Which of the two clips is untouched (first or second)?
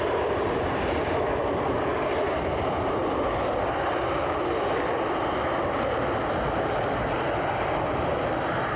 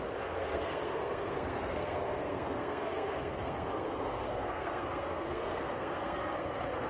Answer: first